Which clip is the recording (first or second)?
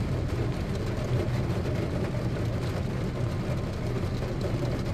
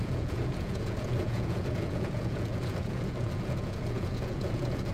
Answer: first